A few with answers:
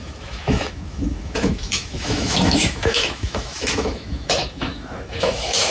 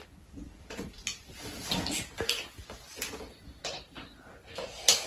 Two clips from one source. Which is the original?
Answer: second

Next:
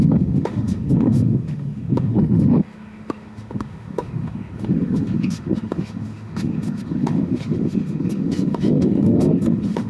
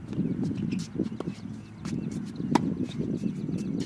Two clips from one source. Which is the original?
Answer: second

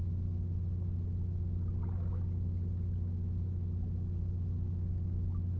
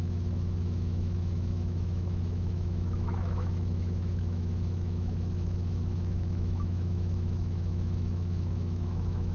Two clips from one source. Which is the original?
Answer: first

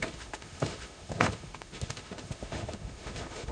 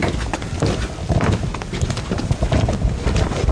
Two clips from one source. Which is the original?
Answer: second